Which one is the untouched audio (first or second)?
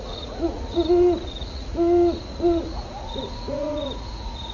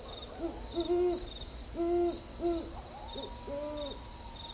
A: second